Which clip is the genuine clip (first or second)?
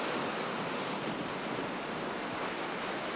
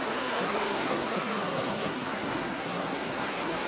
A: first